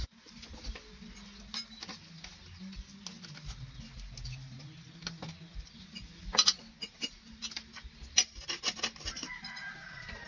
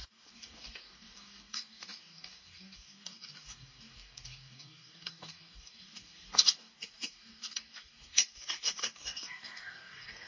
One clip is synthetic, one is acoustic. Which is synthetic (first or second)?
second